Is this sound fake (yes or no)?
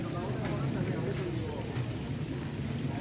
no